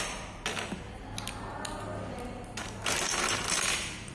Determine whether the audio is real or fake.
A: real